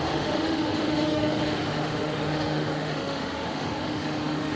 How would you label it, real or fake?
fake